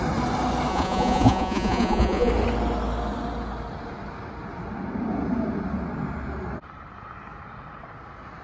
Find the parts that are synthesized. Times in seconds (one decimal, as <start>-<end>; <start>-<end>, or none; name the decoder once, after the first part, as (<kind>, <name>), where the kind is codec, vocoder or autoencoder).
0.7-2.3 (vocoder, Vocos)